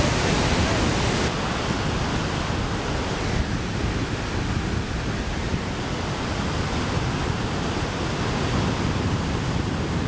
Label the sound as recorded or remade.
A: recorded